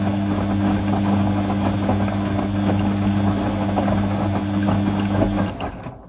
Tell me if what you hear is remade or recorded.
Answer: recorded